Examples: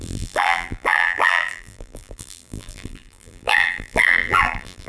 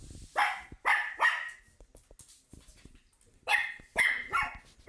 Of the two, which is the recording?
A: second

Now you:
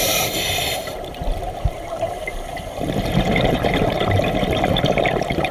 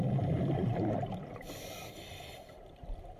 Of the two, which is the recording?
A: second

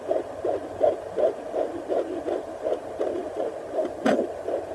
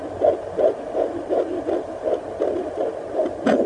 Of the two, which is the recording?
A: second